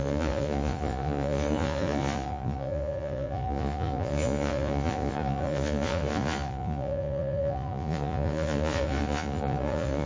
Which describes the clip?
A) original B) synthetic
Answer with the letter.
B